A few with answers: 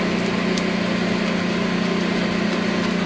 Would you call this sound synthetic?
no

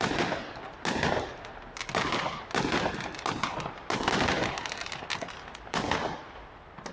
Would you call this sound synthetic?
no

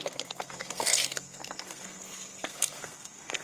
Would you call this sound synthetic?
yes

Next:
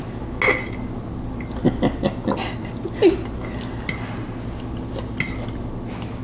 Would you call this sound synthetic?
no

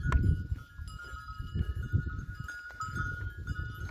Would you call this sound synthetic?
no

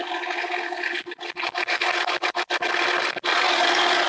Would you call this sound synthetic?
no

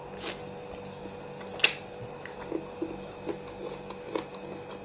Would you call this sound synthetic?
no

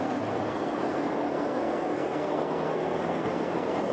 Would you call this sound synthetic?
yes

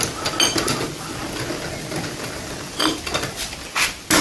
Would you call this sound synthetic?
no